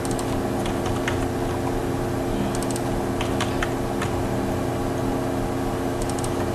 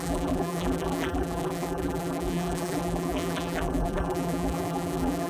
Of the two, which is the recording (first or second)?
first